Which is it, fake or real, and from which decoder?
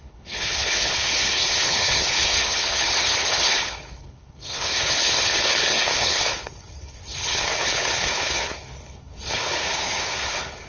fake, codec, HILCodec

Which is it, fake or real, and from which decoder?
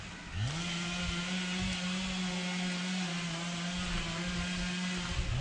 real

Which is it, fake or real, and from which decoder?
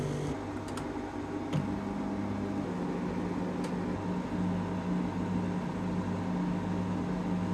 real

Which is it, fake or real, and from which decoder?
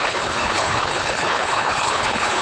fake, codec, HILCodec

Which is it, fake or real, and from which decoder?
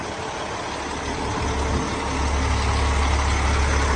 real